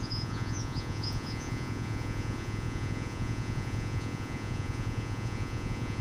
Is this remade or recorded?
remade